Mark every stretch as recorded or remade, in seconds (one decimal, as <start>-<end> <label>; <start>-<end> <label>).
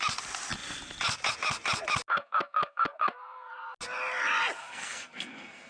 0.0-2.1 recorded; 2.1-3.5 remade; 3.5-4.6 recorded; 4.6-5.7 remade